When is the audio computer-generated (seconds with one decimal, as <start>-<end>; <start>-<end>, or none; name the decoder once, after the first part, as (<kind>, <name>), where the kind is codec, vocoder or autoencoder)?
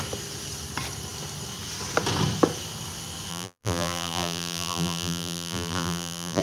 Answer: 3.3-6.4 (vocoder, BigVGAN v2)